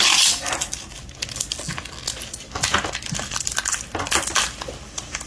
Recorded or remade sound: recorded